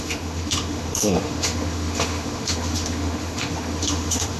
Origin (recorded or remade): remade